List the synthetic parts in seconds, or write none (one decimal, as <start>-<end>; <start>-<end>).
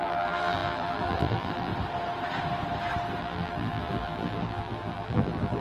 0.0-1.7; 3.2-5.6